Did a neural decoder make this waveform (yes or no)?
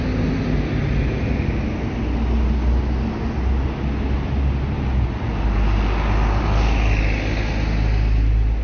no